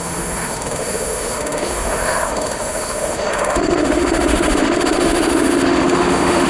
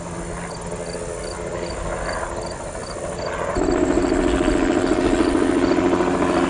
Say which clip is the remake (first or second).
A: first